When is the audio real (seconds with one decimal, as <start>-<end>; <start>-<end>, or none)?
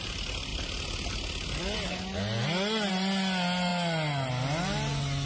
0.0-5.3